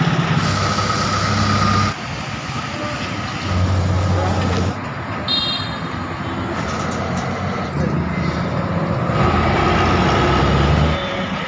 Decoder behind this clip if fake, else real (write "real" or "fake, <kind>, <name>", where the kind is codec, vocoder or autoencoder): real